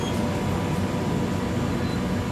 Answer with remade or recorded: recorded